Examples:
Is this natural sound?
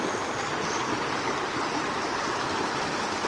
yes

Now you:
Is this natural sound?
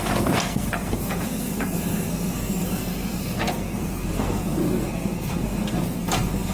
no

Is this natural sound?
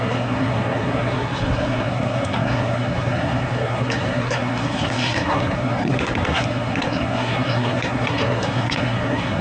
no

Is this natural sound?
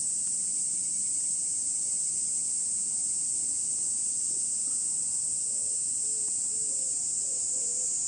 no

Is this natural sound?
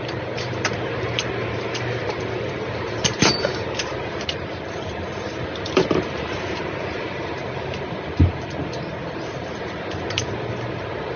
no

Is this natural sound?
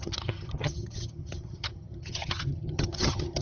no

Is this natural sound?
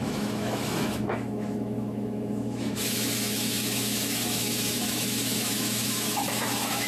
no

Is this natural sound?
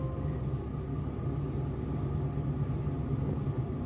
yes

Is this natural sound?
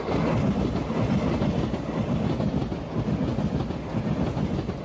yes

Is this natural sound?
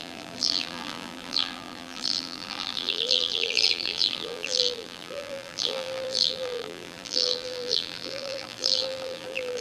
no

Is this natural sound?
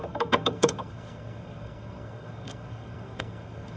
no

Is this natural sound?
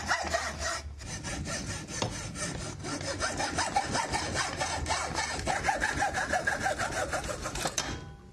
yes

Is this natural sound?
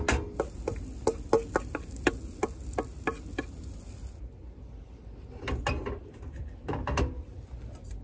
yes